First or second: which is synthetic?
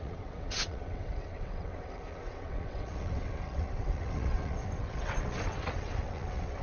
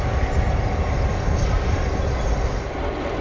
first